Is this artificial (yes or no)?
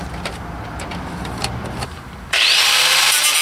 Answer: yes